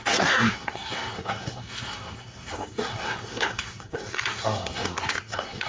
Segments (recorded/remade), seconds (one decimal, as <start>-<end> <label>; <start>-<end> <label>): 0.0-5.7 remade